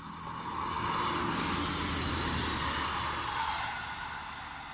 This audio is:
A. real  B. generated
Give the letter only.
A